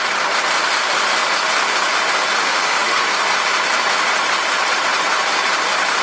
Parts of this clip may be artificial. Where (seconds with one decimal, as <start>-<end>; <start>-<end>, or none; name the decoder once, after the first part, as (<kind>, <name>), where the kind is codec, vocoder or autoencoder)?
2.4-3.0 (autoencoder, DAC-VAE)